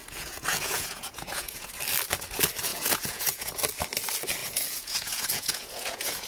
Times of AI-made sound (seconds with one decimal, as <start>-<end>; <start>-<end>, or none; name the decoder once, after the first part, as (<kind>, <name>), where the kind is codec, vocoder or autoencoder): 0.0-1.7 (vocoder, Vocos); 2.7-3.6; 4.4-6.3